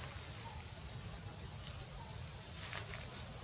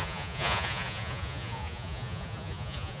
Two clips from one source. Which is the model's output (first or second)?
second